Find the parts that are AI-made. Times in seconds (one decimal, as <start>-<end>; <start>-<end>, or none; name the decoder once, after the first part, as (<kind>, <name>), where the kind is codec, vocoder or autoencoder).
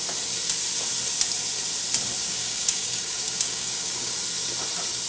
2.2-4.2 (codec, DAC)